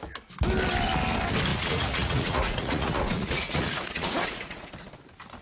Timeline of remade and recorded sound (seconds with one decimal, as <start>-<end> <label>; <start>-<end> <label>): 0.0-1.5 recorded; 1.5-4.7 remade; 4.7-5.4 recorded